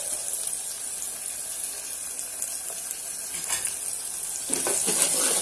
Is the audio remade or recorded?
recorded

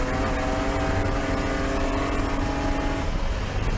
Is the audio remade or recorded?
recorded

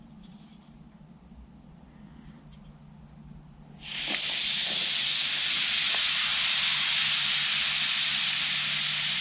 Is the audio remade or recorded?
recorded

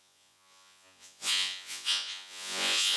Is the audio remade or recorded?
remade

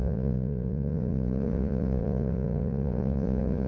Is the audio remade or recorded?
remade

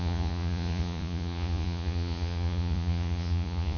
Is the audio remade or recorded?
remade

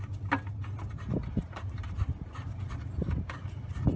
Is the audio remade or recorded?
recorded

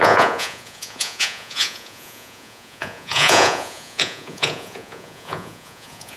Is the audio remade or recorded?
remade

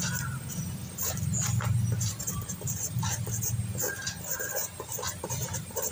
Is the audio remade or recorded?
recorded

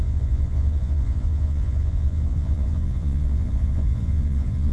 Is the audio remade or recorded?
remade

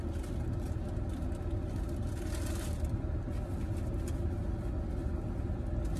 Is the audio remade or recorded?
recorded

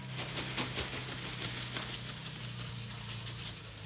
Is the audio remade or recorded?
recorded